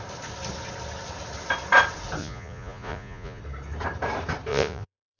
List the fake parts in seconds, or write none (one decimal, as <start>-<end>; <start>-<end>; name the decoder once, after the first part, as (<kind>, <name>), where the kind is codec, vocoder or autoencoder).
2.2-3.4 (vocoder, Vocos); 4.5-5.2